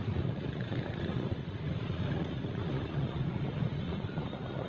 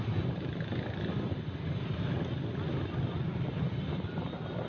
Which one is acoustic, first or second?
second